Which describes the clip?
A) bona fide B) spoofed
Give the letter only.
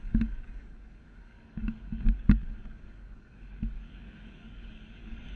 B